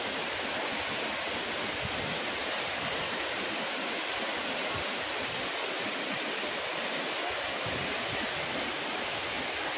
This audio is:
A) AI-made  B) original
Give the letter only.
B